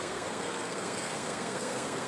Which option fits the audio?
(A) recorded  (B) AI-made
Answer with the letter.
B